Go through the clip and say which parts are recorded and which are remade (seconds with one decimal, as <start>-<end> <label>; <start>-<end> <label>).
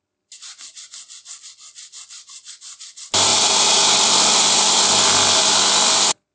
0.0-6.3 recorded